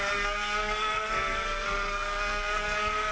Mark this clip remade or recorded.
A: remade